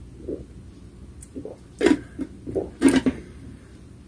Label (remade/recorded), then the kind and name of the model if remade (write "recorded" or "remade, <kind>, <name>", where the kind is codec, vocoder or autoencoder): recorded